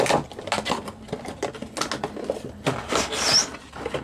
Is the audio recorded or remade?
recorded